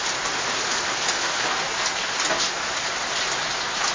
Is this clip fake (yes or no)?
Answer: no